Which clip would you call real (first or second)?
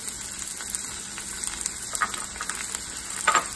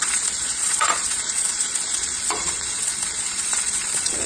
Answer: first